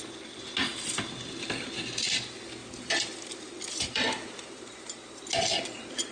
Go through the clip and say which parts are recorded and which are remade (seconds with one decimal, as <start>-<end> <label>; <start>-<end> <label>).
0.0-2.6 recorded; 2.6-5.2 remade; 5.2-6.1 recorded